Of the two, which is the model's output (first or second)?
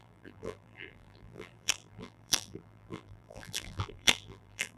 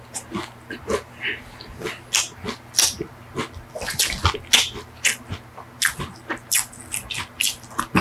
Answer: first